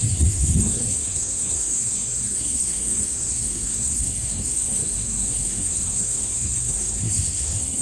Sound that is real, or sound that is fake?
fake